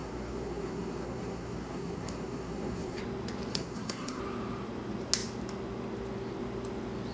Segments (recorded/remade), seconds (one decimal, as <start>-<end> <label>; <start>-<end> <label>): 0.0-3.0 remade; 3.0-3.5 recorded; 3.5-4.2 remade; 4.2-7.1 recorded